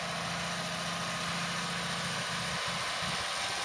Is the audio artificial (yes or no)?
no